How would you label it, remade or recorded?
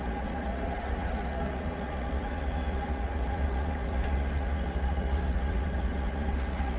remade